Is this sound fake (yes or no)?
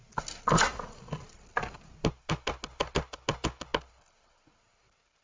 no